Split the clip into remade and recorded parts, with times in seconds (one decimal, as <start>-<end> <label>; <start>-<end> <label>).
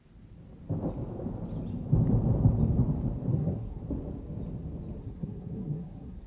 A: 0.0-3.3 recorded; 3.3-3.8 remade; 3.8-5.0 recorded; 5.0-6.3 remade